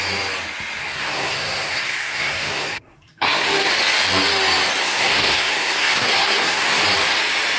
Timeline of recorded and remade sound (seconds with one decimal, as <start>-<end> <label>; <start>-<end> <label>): 0.0-0.8 recorded; 0.8-3.7 remade; 3.7-4.8 recorded; 4.8-6.8 remade; 6.8-7.6 recorded